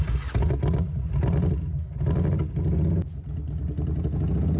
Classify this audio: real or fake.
real